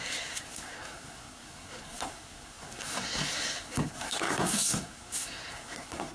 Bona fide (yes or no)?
no